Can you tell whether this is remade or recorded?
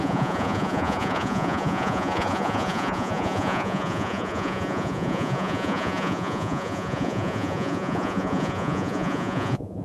remade